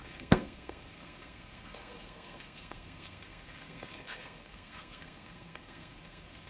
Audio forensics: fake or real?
fake